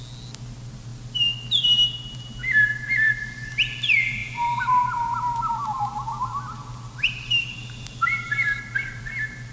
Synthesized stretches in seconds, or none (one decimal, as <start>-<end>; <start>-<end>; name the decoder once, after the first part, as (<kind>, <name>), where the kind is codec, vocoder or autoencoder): 4.2-9.0 (vocoder, BigVGAN v2)